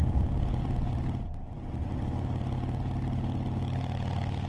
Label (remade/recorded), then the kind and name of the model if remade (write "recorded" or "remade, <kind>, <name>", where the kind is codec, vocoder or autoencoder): recorded